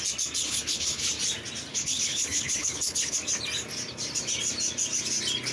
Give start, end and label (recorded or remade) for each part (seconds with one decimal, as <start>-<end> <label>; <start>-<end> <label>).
0.0-0.4 recorded; 0.4-1.0 remade; 1.0-1.7 recorded; 1.7-3.2 remade; 3.2-5.5 recorded